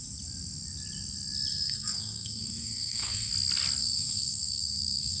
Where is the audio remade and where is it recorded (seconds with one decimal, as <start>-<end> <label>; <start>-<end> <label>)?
0.0-1.5 recorded; 1.5-3.3 remade; 3.3-3.8 recorded; 3.8-5.2 remade